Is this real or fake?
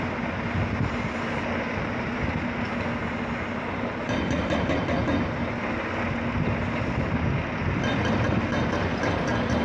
real